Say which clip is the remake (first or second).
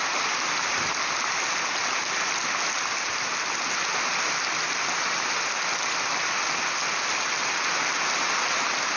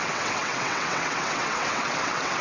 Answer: second